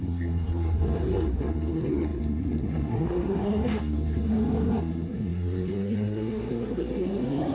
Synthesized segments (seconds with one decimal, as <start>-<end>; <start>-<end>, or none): 0.0-7.5

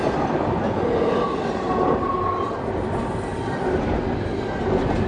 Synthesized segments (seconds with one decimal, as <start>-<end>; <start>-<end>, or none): none

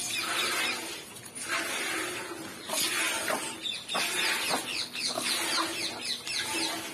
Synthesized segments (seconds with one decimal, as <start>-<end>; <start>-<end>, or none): 4.7-5.3

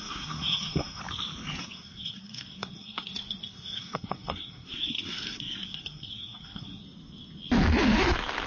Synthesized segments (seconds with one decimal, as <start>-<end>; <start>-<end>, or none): 0.0-1.0; 1.6-6.8

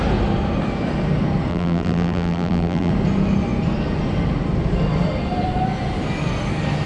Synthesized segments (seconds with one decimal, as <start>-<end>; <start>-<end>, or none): 1.5-2.9

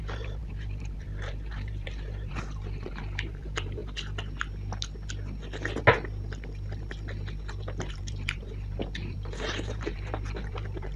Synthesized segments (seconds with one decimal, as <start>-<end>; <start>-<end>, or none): 0.0-3.8; 7.9-11.0